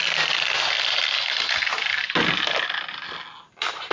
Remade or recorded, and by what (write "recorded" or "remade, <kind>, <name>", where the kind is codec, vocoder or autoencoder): recorded